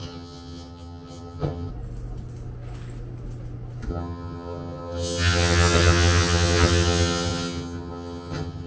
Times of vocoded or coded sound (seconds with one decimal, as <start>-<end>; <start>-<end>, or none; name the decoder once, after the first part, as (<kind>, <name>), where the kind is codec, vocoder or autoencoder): 0.0-1.7 (vocoder, HiFi-GAN); 3.9-8.7